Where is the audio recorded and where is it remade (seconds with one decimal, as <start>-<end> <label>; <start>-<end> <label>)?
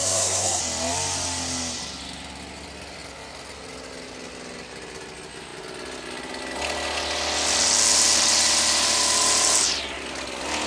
0.0-0.6 remade; 0.6-10.7 recorded